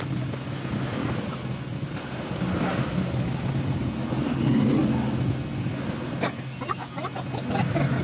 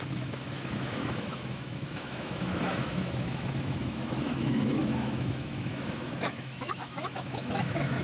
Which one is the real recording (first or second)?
first